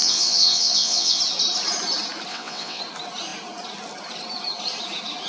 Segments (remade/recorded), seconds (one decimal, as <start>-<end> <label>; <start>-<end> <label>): 0.0-1.2 remade; 1.2-2.3 recorded; 2.3-2.8 remade; 2.8-5.3 recorded